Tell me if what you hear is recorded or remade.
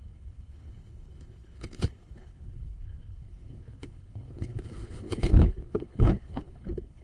remade